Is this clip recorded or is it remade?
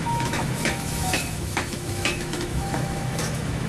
remade